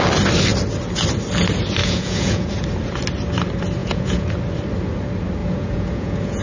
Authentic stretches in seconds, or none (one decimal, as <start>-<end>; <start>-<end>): 0.0-1.8; 2.5-3.8; 4.3-5.4